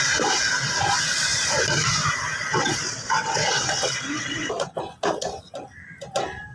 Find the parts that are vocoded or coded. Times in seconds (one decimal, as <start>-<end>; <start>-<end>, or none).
2.5-4.7

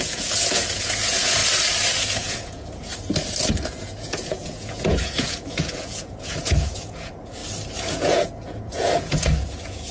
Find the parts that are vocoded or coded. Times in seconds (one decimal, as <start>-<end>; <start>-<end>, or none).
0.0-1.4; 1.9-2.9; 3.5-7.4; 7.9-9.9

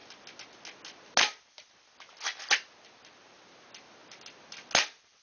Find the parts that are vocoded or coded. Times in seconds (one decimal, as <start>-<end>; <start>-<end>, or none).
none

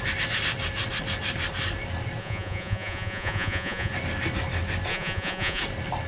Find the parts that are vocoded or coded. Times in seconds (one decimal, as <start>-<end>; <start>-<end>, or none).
2.2-3.9; 4.9-5.6

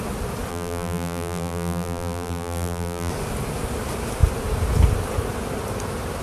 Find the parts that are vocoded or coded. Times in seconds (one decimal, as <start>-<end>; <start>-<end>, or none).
0.5-3.1

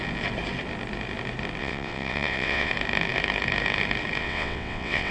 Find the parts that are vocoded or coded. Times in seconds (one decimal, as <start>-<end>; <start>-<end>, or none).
1.6-2.7; 4.2-5.1

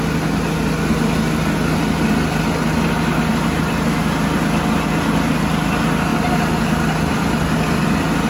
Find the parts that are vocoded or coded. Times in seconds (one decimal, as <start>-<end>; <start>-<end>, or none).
none

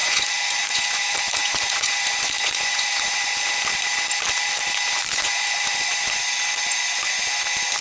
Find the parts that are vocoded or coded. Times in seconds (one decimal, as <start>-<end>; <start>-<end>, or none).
0.0-3.4; 5.0-6.2